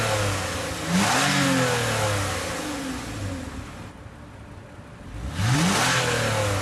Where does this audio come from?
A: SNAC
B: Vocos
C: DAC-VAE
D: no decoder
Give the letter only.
D